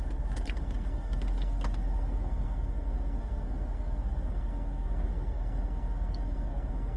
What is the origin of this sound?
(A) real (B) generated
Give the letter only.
B